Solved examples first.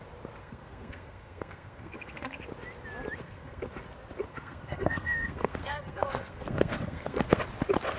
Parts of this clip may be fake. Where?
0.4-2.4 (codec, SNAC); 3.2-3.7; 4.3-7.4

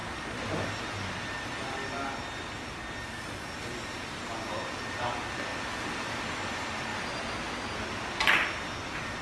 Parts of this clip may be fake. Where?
none